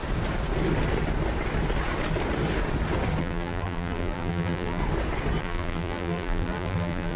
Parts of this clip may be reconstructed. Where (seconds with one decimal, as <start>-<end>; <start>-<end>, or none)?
3.2-4.8; 5.4-7.2